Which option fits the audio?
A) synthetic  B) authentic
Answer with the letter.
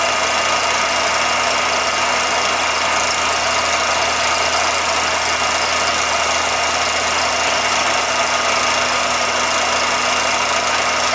B